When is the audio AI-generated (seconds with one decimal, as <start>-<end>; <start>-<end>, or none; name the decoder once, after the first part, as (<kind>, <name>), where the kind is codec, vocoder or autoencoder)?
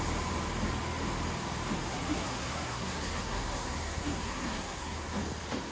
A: 1.9-5.2 (codec, SNAC)